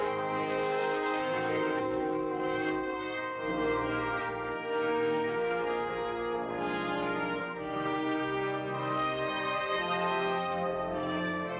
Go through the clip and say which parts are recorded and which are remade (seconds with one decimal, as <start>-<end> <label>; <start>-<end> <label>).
0.0-3.5 remade; 3.5-4.2 recorded; 4.2-5.9 remade; 5.9-7.4 recorded; 7.4-11.6 remade